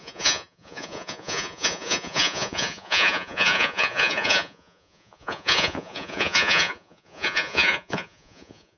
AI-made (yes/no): yes